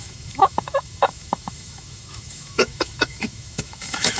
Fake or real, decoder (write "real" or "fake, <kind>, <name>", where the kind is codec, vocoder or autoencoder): fake, autoencoder, DAC-VAE